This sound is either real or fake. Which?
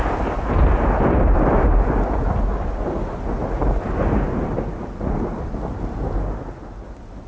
real